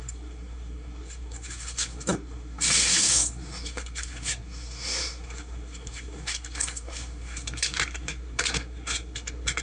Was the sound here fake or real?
fake